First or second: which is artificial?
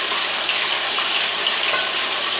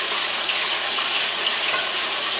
second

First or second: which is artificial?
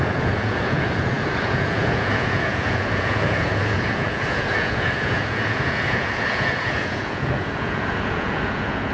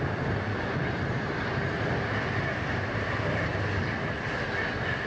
first